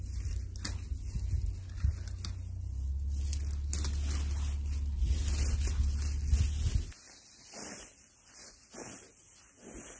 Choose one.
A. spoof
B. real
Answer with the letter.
B